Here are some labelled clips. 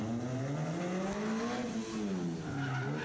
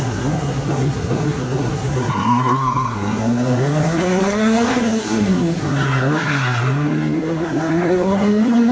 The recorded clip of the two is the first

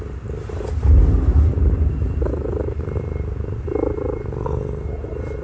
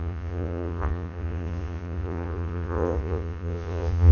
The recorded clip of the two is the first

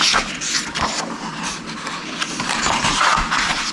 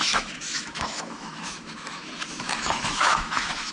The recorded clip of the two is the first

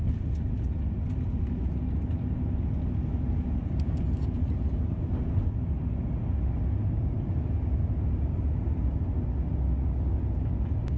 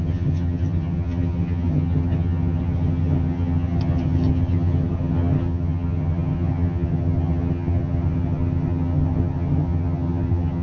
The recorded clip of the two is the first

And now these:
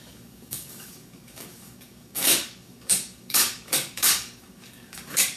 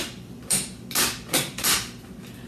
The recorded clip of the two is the second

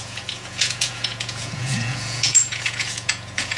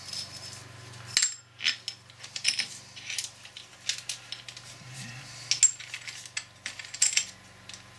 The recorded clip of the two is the second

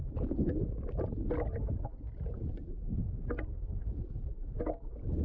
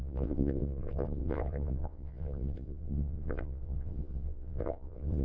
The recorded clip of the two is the first